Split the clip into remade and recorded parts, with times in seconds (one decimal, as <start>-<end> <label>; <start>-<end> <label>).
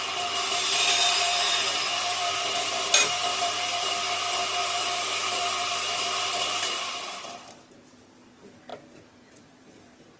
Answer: 0.0-8.7 remade; 8.7-9.4 recorded; 9.4-10.2 remade